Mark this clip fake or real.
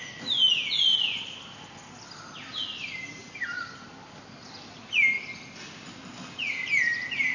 real